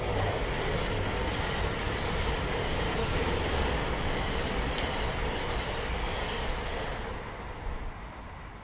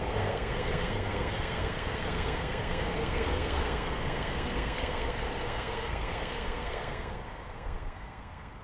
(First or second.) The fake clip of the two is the second